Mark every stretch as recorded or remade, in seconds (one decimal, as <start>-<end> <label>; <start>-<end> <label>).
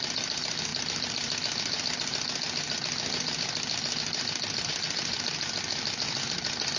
0.0-6.8 recorded